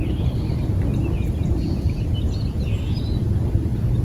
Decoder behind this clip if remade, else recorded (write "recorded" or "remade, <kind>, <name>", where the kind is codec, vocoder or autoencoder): recorded